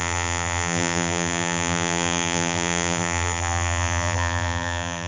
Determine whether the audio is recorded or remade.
remade